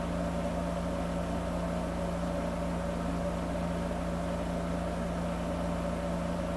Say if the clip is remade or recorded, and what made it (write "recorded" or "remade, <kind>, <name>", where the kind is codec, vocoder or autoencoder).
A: recorded